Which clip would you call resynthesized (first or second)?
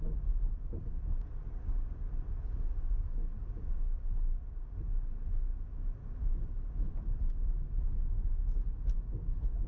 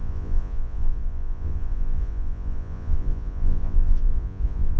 second